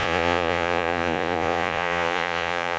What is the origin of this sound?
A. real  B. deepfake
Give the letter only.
B